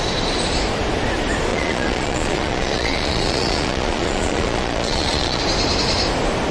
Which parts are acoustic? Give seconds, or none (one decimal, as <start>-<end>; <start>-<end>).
0.0-1.5; 5.4-6.5